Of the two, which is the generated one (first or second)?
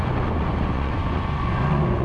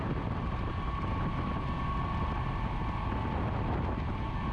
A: first